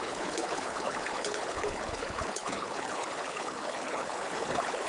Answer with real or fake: fake